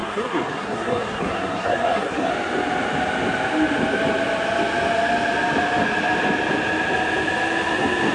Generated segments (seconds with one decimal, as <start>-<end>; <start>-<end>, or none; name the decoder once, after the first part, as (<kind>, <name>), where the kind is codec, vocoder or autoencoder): 0.0-2.3 (codec, SNAC)